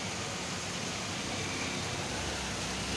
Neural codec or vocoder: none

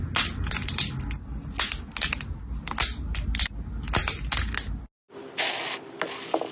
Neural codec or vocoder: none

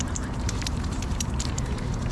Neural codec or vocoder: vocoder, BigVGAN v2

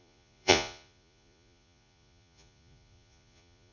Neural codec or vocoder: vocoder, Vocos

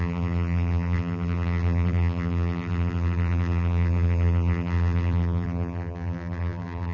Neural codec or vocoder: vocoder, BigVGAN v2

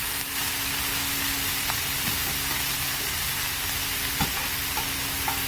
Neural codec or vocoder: none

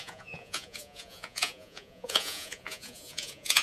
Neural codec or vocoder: vocoder, Vocos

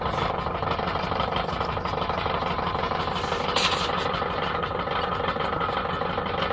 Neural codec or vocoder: vocoder, BigVGAN v2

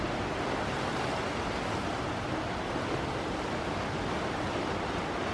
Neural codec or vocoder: none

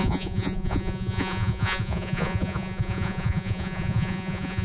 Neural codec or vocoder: vocoder, Vocos